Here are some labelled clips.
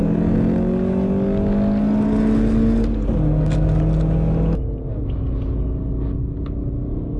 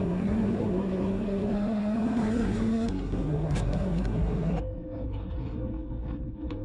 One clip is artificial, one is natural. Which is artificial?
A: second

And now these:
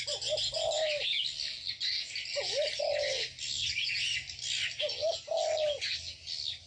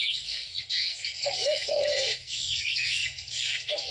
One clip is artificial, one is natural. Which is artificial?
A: second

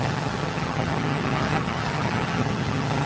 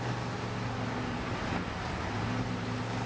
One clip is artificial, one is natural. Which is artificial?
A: first